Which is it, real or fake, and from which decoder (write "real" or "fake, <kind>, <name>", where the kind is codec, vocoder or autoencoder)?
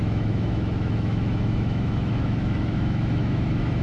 fake, autoencoder, DAC-VAE